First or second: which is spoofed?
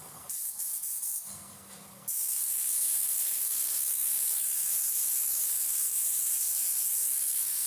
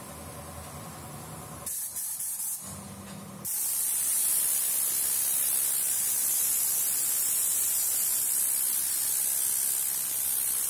first